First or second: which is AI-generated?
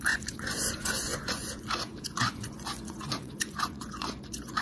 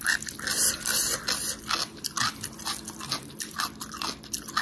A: first